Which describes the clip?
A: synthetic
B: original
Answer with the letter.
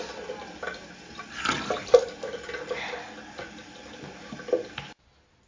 B